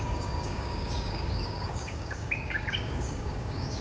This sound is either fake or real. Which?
fake